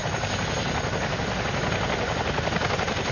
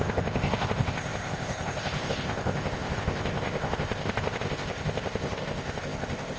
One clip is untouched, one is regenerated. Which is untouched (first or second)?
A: first